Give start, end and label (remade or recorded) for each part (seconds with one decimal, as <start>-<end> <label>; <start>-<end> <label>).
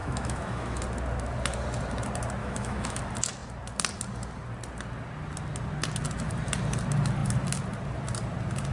0.0-0.8 remade; 0.8-2.4 recorded; 2.4-3.0 remade; 3.0-8.7 recorded